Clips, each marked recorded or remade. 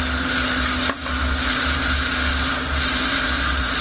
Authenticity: recorded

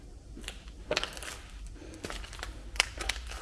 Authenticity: recorded